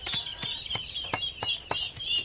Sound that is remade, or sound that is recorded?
recorded